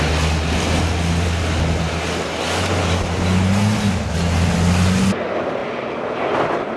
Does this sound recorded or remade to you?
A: recorded